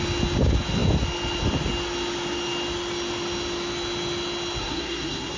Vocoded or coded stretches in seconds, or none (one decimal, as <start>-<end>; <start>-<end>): 4.6-5.4